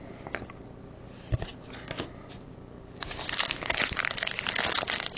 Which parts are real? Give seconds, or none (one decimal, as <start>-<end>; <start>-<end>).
0.0-5.2